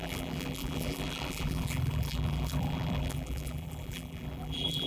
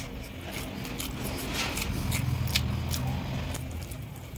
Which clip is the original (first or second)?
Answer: second